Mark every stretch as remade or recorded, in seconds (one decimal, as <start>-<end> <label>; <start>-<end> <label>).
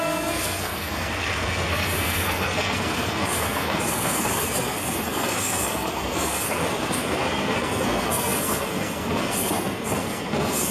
0.0-10.7 remade